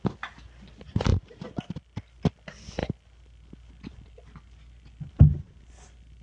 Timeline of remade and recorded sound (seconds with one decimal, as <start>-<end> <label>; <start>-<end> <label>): 0.0-1.1 recorded; 1.1-2.0 remade; 2.0-6.2 recorded